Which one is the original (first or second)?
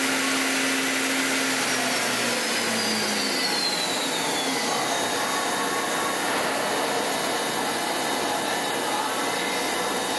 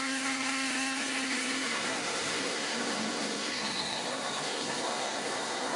first